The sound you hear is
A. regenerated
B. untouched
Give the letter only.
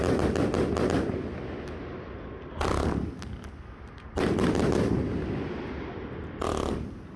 B